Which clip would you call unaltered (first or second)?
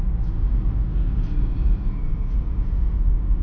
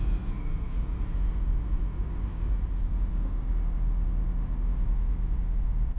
second